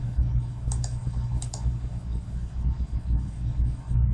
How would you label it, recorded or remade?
remade